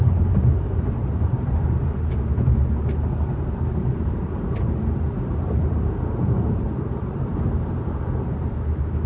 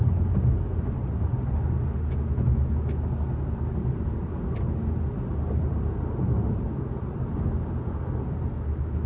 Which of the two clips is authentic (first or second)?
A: second